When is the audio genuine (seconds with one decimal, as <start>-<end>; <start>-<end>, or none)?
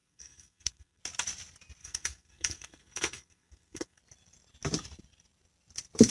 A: 1.0-1.8; 4.0-6.1